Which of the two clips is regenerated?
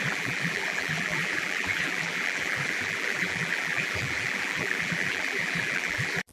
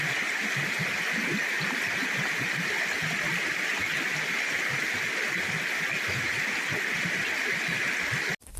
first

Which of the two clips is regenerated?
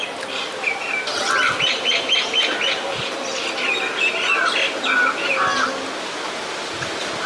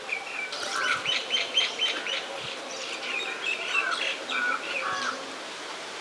second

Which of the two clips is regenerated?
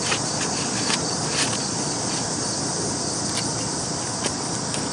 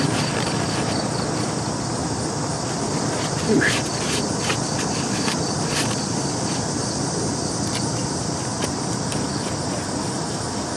second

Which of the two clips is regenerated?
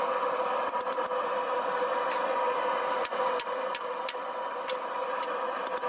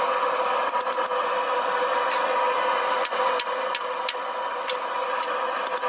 first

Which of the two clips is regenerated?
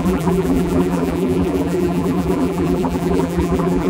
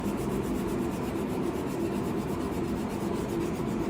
first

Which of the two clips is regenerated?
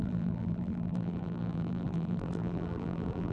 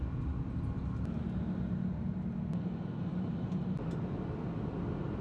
first